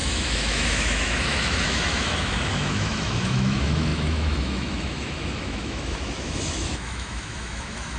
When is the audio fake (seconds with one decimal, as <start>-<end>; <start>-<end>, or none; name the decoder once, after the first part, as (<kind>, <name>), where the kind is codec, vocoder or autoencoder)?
0.0-8.0 (autoencoder, DAC-VAE)